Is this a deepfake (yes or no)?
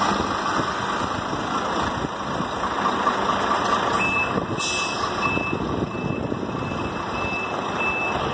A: no